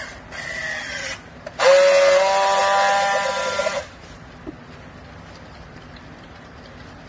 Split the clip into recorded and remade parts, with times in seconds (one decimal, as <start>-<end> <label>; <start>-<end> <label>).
0.0-7.1 recorded